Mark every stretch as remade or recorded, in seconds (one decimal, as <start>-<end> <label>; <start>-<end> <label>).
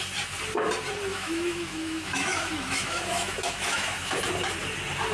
0.0-1.1 recorded; 1.1-4.2 remade; 4.2-5.1 recorded